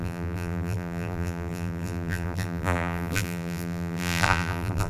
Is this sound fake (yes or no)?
yes